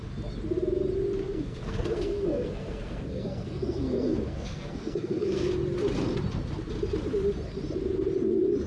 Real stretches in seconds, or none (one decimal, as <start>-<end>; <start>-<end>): 0.0-1.2; 5.5-8.7